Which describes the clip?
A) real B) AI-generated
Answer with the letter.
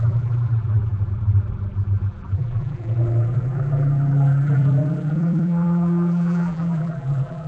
B